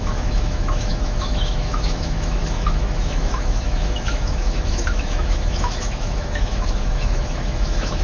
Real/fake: fake